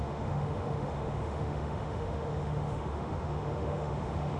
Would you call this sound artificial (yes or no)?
yes